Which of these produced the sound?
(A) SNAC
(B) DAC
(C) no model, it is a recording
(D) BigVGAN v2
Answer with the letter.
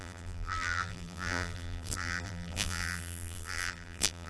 D